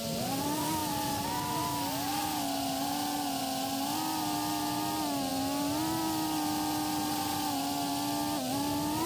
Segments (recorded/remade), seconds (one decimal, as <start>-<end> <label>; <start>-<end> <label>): 0.0-9.1 recorded